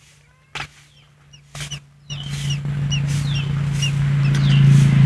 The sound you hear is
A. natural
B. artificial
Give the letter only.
A